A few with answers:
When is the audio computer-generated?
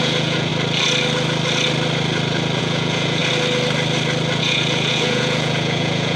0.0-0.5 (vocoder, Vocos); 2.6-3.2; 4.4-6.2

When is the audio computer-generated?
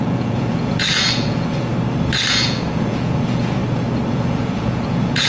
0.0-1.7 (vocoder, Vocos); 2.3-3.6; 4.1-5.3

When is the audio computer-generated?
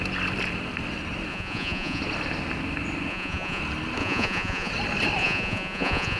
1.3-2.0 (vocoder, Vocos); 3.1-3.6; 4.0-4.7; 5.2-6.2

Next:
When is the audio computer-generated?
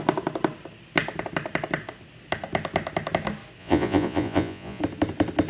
3.6-4.8 (vocoder, Vocos)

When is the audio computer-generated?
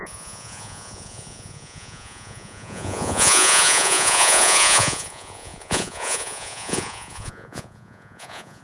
0.0-8.6 (vocoder, Vocos)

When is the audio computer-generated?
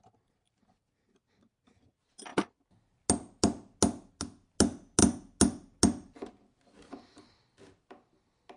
none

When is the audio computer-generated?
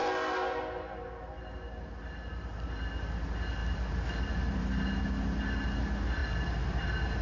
none